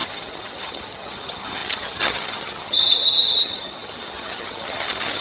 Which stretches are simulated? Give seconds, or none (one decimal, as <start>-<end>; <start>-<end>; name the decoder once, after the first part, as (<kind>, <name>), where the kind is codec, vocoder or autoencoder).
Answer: 0.0-5.2 (vocoder, HiFi-GAN)

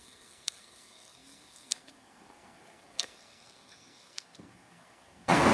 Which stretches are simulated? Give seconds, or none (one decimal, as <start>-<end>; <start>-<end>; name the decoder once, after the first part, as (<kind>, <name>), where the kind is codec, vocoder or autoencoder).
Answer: 0.0-5.5 (codec, SNAC)

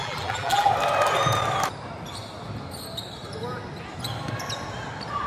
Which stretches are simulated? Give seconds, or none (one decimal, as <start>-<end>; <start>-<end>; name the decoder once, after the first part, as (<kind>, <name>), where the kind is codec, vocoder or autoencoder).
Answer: 0.0-0.7 (vocoder, BigVGAN v2)

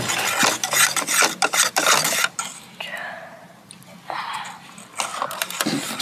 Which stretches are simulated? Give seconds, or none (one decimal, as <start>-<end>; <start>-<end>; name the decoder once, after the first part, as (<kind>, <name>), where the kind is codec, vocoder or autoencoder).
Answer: none